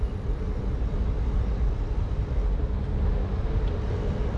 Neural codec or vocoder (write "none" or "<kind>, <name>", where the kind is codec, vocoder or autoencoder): none